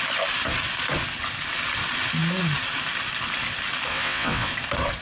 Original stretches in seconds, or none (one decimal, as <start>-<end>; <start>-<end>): 0.0-3.9; 4.5-5.0